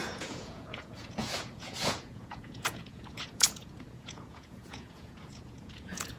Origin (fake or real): fake